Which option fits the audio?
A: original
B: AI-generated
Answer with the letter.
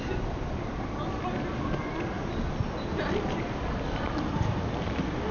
A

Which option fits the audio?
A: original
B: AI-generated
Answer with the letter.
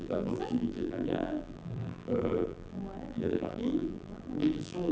B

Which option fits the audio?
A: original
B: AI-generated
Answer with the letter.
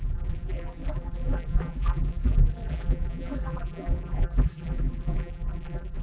B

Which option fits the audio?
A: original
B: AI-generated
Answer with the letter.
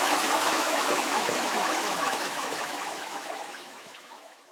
B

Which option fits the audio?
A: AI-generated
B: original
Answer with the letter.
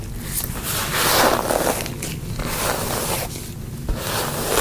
B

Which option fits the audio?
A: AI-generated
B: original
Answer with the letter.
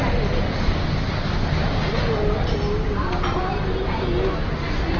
B